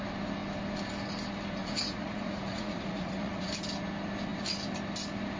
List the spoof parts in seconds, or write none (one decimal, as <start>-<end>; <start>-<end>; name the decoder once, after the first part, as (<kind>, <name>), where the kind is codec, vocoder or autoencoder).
1.6-3.5 (vocoder, Vocos)